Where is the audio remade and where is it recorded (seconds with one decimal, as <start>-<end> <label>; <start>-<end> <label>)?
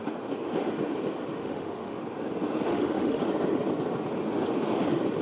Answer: 0.0-1.4 recorded; 1.4-2.0 remade; 2.0-2.7 recorded; 2.7-3.2 remade; 3.2-5.2 recorded